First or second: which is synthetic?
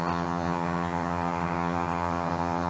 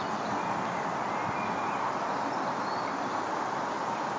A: first